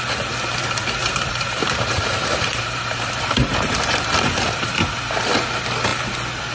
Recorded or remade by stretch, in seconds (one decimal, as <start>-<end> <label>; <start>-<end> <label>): 0.0-1.0 recorded; 1.0-4.9 remade; 4.9-6.5 recorded